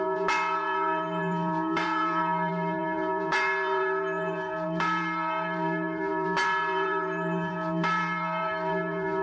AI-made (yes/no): yes